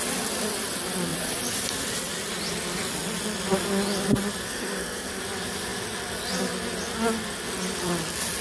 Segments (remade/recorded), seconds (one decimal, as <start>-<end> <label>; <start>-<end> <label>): 0.0-4.5 recorded; 4.5-5.2 remade; 5.2-8.4 recorded